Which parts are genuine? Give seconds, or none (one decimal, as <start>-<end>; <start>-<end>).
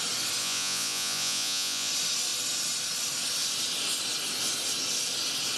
0.0-0.4; 1.9-5.6